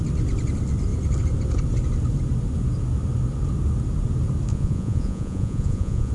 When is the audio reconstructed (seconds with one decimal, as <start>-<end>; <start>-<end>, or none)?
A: 4.5-6.1